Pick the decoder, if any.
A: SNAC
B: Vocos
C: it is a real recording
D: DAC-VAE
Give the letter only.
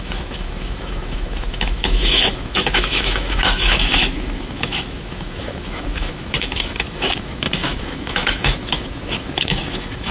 D